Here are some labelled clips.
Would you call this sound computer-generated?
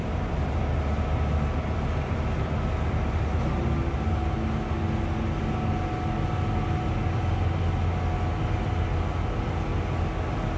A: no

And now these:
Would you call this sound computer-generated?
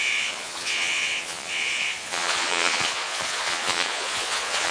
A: yes